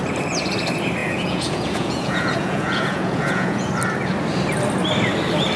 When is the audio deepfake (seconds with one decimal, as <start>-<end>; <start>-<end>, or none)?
1.0-3.7